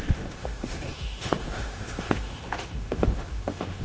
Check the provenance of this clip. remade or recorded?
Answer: remade